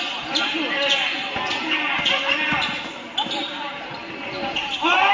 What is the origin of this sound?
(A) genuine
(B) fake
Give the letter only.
A